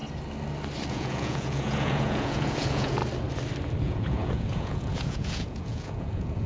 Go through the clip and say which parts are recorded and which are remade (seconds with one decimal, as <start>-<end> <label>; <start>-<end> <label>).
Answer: 0.0-0.9 recorded; 0.9-3.0 remade; 3.0-3.8 recorded; 3.8-6.5 remade